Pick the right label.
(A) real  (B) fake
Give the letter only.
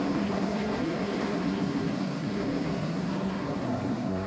B